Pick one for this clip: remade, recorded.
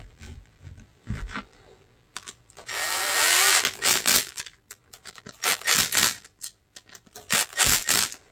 remade